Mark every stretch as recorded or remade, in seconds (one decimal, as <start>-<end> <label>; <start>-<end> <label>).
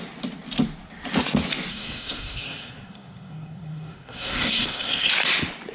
0.0-1.7 recorded; 1.7-5.1 remade; 5.1-5.7 recorded